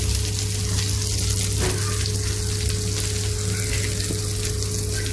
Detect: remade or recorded recorded